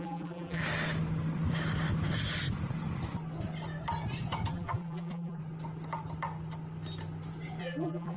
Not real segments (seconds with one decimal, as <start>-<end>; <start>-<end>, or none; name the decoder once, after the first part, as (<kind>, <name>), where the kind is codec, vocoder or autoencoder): 0.0-0.6 (vocoder, BigVGAN v2); 4.5-5.4; 7.6-8.2